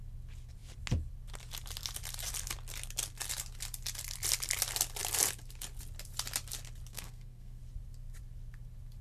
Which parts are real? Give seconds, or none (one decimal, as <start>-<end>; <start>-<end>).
0.0-6.9; 7.6-9.0